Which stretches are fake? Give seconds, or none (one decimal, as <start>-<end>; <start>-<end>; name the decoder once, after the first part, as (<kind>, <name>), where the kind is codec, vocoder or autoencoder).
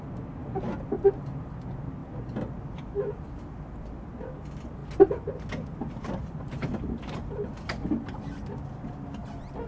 none